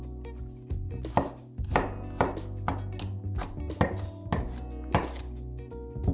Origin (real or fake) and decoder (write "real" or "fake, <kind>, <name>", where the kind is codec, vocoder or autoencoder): real